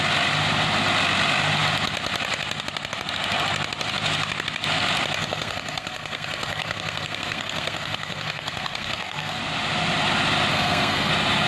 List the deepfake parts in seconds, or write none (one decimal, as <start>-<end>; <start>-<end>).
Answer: 5.2-9.4; 10.5-11.1